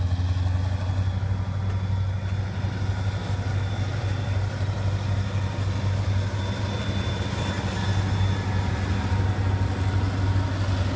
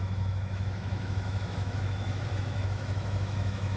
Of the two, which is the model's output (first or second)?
second